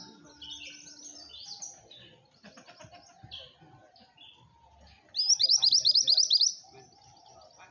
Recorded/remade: recorded